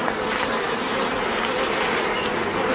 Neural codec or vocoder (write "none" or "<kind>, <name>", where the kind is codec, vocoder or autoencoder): none